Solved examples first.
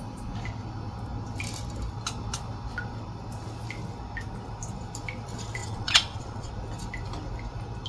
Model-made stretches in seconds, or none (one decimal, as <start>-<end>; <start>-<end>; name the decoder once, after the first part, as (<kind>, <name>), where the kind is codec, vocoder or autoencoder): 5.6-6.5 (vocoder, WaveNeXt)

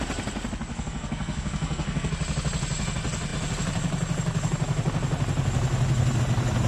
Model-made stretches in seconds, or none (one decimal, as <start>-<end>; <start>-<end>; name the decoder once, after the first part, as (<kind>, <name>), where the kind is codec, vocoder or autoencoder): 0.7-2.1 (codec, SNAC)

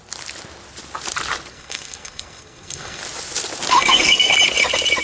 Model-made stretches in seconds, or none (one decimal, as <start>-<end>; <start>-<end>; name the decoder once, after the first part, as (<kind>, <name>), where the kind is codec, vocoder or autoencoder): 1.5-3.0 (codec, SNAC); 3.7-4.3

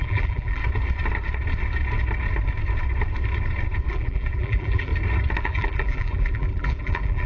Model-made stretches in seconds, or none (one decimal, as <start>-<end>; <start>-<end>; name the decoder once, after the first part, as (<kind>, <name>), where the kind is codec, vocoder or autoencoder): 0.0-0.6 (vocoder, BigVGAN v2); 3.9-4.9; 5.4-7.3